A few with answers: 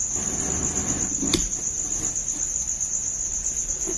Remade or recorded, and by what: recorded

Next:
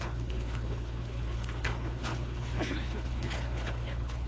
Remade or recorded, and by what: remade, codec, HILCodec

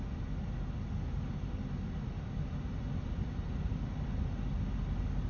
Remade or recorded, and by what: recorded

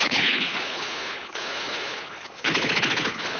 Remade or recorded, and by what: remade, codec, HILCodec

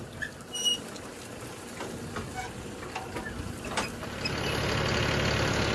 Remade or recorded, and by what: recorded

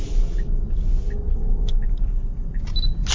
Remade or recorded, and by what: recorded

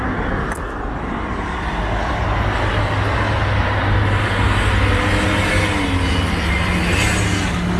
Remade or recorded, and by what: recorded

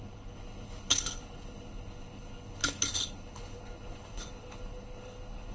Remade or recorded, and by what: remade, codec, HILCodec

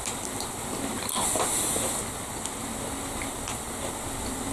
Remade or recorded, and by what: recorded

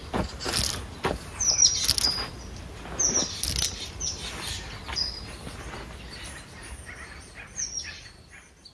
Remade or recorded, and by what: recorded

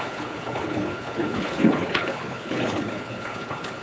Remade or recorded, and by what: remade, codec, HILCodec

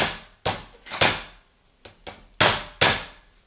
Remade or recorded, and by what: recorded